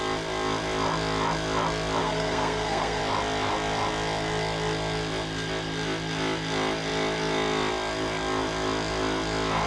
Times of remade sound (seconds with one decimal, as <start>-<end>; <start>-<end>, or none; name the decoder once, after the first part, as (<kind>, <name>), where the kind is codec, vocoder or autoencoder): 2.0-3.0 (codec, SNAC)